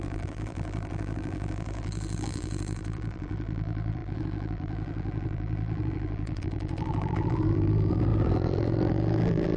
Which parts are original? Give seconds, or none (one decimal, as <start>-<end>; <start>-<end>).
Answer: none